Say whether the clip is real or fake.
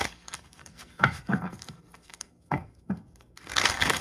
fake